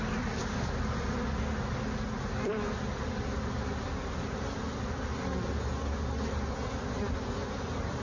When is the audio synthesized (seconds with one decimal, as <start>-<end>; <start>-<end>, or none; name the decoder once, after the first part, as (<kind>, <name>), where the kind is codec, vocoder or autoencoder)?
none